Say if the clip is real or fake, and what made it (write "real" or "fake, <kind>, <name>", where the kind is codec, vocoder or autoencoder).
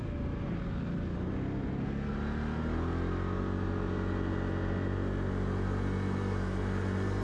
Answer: real